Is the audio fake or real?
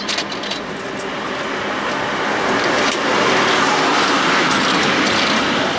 real